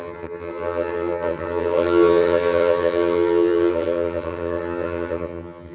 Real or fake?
fake